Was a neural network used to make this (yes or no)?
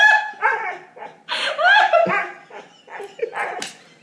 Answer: no